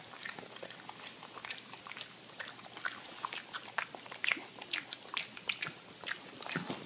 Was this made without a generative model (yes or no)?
yes